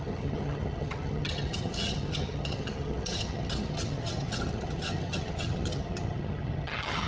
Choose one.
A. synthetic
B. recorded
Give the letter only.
A